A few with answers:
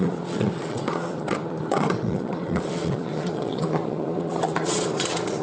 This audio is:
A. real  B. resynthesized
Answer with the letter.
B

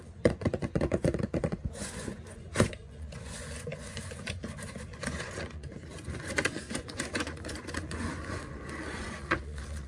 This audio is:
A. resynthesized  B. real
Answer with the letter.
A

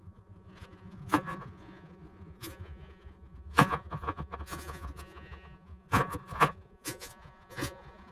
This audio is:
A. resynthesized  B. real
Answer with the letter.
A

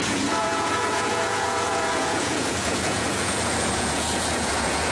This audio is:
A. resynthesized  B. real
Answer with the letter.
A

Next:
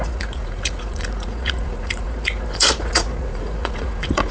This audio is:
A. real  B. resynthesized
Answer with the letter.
B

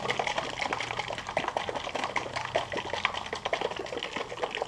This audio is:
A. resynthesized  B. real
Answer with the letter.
B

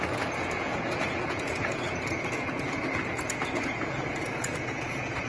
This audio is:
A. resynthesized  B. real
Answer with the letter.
A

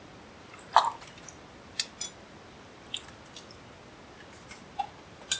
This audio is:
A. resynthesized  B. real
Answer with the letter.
B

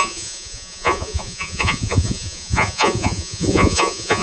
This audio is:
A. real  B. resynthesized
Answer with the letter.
B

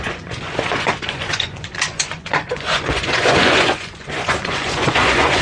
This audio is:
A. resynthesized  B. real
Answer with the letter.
A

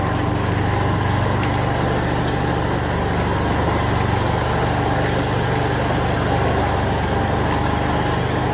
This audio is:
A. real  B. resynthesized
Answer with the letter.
A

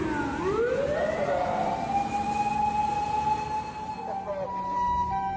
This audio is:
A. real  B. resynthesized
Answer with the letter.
A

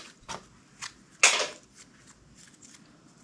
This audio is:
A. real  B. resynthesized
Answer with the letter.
A